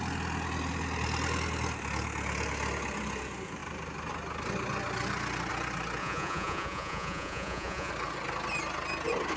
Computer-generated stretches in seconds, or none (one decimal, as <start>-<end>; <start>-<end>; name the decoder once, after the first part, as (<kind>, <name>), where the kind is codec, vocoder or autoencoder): 6.0-7.9 (vocoder, Vocos)